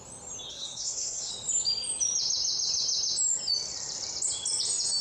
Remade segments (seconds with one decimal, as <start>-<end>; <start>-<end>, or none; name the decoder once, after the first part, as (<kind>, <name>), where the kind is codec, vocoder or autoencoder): 0.5-1.3 (codec, SNAC)